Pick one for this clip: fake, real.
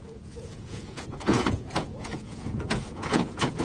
fake